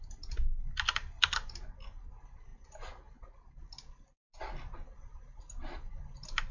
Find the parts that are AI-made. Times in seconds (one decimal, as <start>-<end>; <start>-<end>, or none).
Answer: none